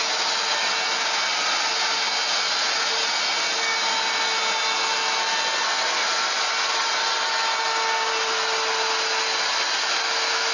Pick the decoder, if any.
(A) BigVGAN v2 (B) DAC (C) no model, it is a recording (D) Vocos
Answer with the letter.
C